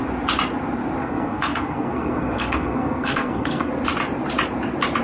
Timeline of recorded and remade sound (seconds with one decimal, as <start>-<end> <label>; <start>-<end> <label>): 0.0-1.0 recorded; 1.0-3.7 remade; 3.7-5.0 recorded